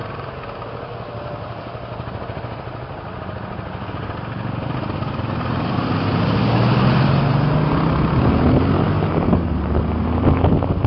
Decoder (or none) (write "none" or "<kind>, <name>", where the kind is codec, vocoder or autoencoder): none